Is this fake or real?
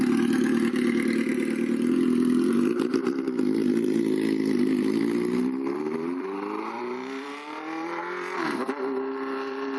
fake